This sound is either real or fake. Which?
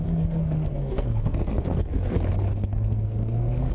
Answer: fake